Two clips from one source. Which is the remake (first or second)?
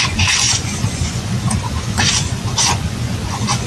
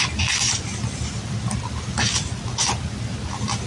first